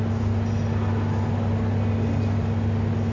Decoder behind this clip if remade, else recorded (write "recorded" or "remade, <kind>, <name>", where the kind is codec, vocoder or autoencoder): recorded